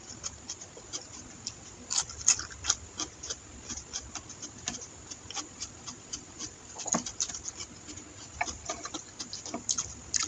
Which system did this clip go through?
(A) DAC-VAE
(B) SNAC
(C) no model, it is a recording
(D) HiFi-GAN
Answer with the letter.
C